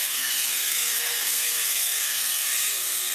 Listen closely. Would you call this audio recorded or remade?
remade